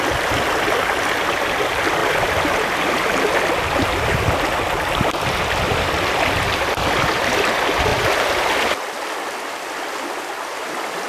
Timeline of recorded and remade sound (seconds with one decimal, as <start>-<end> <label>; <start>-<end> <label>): 0.0-2.0 recorded; 2.0-2.9 remade; 2.9-11.1 recorded